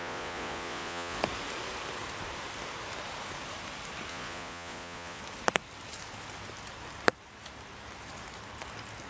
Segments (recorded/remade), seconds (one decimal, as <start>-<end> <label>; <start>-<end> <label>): 0.0-1.2 remade; 1.2-4.1 recorded; 4.1-5.2 remade; 5.2-9.1 recorded